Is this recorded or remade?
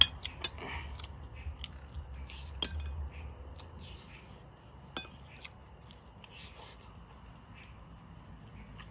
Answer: recorded